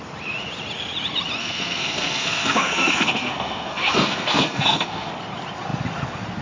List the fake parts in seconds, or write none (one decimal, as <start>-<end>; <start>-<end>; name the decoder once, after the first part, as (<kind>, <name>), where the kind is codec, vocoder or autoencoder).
1.4-5.1 (codec, SNAC)